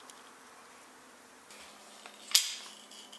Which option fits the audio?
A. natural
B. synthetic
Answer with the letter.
A